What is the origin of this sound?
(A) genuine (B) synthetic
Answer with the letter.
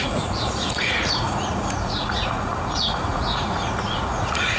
B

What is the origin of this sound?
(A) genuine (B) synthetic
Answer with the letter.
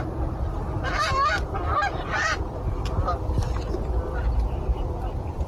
B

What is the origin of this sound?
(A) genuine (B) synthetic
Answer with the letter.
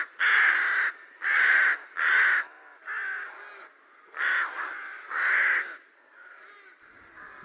A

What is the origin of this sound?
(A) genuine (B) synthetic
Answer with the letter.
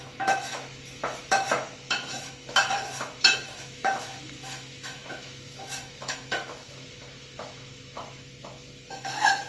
B